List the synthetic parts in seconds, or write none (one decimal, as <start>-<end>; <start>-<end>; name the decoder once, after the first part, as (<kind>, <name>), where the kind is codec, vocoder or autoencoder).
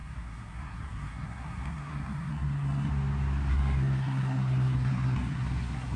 0.0-2.9 (codec, SNAC); 3.5-6.0